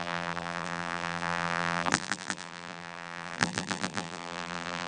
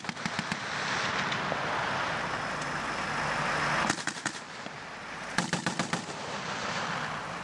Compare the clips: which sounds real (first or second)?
second